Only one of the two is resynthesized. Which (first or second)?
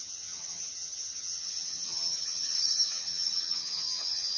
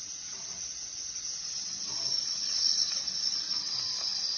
first